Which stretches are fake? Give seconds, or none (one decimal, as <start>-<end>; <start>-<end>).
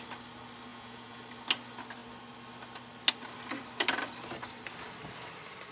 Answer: 0.7-1.2